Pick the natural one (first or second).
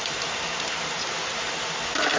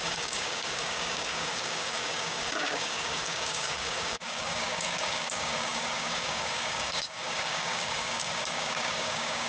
first